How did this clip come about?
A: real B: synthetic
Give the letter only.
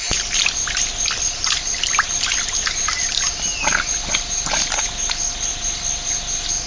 A